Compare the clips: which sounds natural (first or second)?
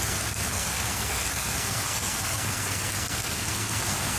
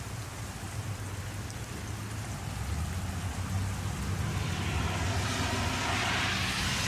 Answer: second